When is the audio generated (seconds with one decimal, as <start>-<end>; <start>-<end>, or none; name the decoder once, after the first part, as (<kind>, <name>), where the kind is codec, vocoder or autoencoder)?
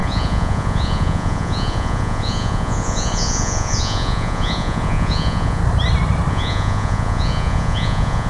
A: 0.0-5.6 (vocoder, Vocos); 6.3-8.3